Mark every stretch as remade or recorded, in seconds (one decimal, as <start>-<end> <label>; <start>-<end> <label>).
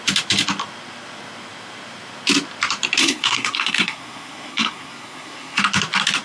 0.0-3.0 recorded; 3.0-5.6 remade; 5.6-6.2 recorded